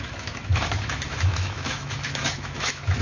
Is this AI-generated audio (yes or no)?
yes